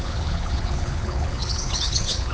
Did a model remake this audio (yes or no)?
yes